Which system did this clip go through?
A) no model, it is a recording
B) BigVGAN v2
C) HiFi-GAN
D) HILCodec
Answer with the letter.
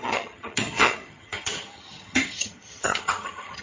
C